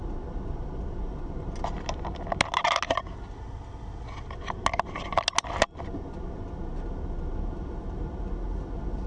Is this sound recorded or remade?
recorded